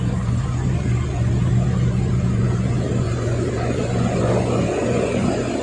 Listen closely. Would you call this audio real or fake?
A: fake